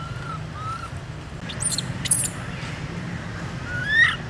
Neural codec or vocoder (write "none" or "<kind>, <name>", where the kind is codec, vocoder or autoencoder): none